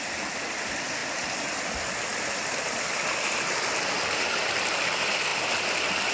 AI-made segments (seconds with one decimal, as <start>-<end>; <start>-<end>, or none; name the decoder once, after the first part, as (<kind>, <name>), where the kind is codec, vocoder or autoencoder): none